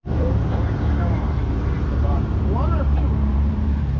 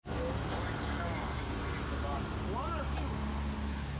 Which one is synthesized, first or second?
first